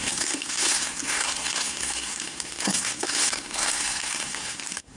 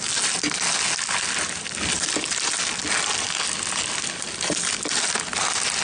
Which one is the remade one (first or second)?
first